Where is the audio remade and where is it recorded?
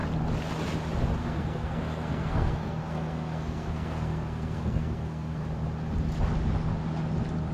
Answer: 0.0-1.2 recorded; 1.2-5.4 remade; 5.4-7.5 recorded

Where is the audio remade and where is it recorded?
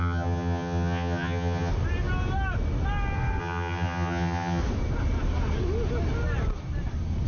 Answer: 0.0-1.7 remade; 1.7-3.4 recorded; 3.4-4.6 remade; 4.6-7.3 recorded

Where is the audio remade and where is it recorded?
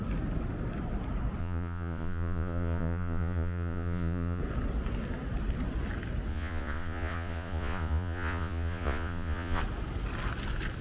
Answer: 0.0-1.4 recorded; 1.4-4.4 remade; 4.4-6.3 recorded; 6.3-9.6 remade; 9.6-10.8 recorded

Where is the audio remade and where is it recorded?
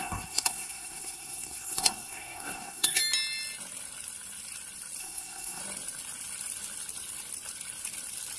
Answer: 0.0-3.0 remade; 3.0-5.0 recorded; 5.0-5.6 remade; 5.6-8.4 recorded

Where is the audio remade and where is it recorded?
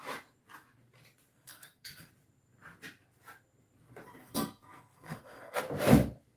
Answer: 0.0-1.3 recorded; 1.3-2.1 remade; 2.1-4.2 recorded; 4.2-5.6 remade; 5.6-6.4 recorded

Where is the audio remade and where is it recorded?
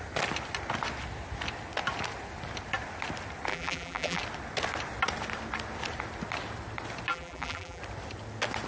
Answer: 0.0-3.5 recorded; 3.5-4.2 remade; 4.2-7.1 recorded; 7.1-7.8 remade; 7.8-8.7 recorded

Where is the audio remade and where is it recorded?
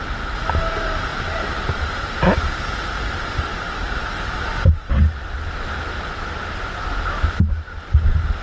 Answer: 0.0-8.4 recorded